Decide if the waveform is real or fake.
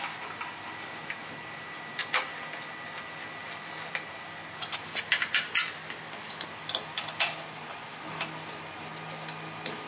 real